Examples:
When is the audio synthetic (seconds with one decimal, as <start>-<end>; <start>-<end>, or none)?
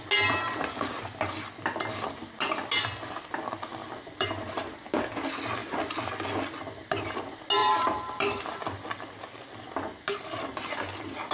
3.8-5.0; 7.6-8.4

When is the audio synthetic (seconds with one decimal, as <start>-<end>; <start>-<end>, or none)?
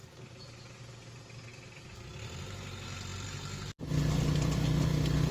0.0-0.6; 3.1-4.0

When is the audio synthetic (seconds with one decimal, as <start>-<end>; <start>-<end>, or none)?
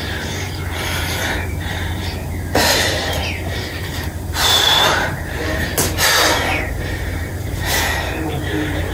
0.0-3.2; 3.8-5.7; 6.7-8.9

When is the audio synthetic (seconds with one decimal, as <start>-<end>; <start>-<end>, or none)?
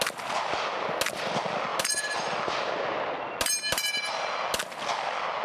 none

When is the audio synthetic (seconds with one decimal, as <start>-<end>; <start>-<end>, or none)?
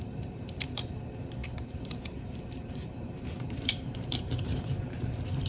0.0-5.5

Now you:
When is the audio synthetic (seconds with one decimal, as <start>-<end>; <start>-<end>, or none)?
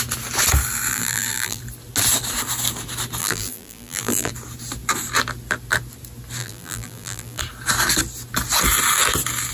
0.9-1.6; 3.2-4.3; 6.4-7.4